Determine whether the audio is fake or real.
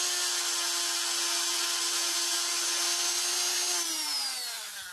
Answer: real